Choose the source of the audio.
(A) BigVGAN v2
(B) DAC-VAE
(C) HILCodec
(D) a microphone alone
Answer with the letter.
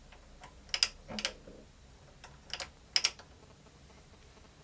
D